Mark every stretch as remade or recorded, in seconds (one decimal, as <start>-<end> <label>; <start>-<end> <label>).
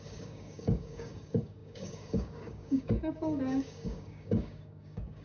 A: 0.0-5.2 remade